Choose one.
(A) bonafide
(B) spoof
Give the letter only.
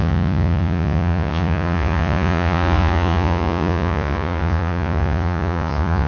B